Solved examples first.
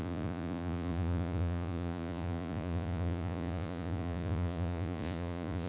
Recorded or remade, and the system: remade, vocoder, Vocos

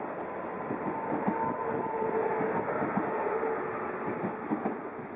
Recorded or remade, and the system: recorded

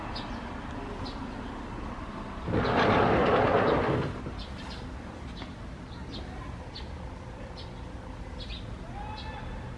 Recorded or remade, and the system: recorded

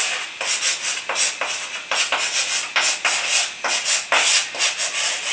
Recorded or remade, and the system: recorded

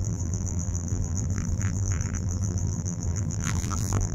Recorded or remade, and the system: remade, vocoder, BigVGAN v2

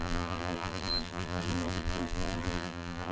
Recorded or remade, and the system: remade, vocoder, BigVGAN v2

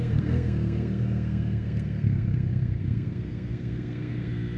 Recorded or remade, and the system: remade, codec, SNAC